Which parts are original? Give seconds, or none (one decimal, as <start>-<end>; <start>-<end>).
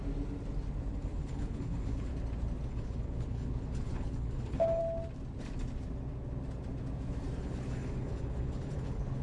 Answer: 0.0-0.9; 2.1-2.7; 4.8-7.4